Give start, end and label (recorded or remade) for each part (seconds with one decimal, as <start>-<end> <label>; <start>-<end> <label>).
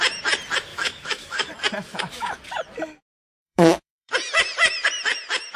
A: 0.0-0.7 recorded; 0.7-1.5 remade; 1.5-1.9 recorded; 1.9-2.4 remade; 2.4-3.2 recorded; 3.2-4.1 remade; 4.1-5.6 recorded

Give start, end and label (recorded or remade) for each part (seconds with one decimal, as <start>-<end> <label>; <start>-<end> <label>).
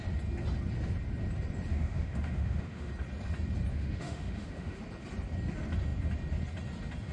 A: 0.0-1.7 recorded; 1.7-2.9 remade; 2.9-3.7 recorded; 3.7-4.8 remade; 4.8-7.1 recorded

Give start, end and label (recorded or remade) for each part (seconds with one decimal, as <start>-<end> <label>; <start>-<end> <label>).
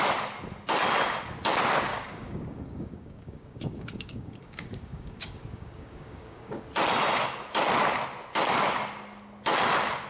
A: 0.0-1.9 recorded; 1.9-6.6 remade; 6.6-10.1 recorded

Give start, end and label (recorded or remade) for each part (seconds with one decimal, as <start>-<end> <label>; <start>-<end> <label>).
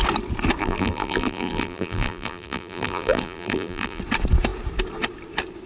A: 0.0-0.6 recorded; 0.6-4.0 remade; 4.0-5.7 recorded